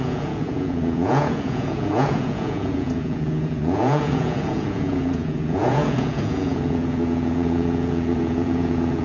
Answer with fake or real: fake